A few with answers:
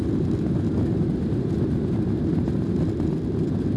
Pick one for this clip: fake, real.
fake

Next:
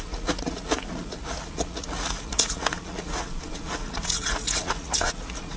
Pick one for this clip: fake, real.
fake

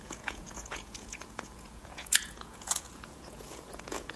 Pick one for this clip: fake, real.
fake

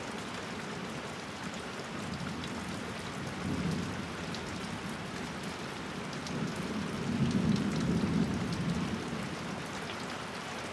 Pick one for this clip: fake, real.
real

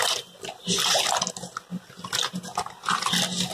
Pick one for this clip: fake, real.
real